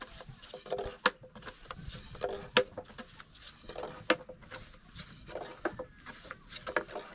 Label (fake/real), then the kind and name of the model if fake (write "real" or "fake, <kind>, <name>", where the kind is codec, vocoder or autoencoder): real